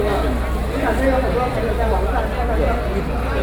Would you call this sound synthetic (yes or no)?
no